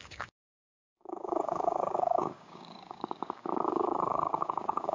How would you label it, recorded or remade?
remade